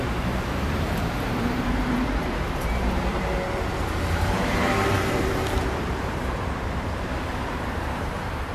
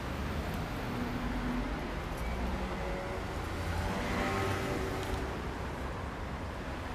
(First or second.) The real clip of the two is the second